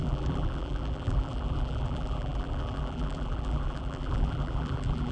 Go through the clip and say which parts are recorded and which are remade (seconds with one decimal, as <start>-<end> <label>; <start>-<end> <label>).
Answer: 0.0-5.1 remade